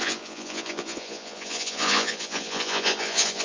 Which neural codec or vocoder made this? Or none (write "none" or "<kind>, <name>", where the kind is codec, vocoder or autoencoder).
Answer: vocoder, Vocos